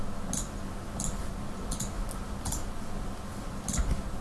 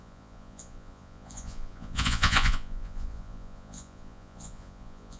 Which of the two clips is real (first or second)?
first